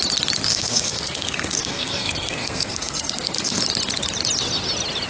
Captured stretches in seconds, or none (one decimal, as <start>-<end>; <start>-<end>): 0.0-0.5; 3.6-5.1